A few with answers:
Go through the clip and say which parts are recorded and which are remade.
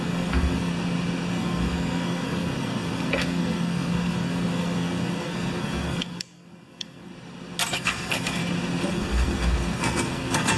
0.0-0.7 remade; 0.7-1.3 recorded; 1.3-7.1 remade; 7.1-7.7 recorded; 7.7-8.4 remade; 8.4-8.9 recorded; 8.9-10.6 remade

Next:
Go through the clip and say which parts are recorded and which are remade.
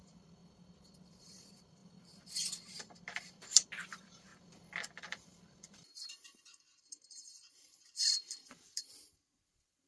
0.0-0.4 remade; 0.4-1.2 recorded; 1.2-1.8 remade; 1.8-2.7 recorded; 2.7-9.9 remade